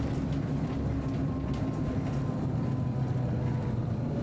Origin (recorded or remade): remade